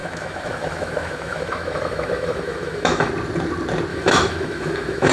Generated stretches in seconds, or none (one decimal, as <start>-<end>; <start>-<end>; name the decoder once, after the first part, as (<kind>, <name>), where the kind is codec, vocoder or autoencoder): 0.0-3.1 (autoencoder, DAC-VAE); 3.9-5.1